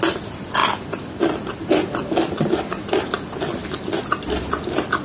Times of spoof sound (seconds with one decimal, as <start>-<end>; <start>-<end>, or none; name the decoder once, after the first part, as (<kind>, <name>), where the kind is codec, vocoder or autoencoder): none